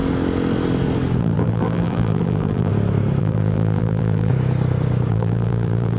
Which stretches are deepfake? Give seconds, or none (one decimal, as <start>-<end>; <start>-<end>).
1.2-2.7; 3.2-4.3; 5.1-6.0